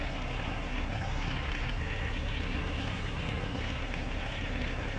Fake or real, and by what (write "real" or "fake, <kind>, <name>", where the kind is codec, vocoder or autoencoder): fake, codec, SNAC